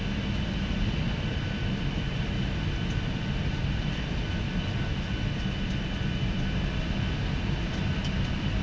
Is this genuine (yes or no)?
yes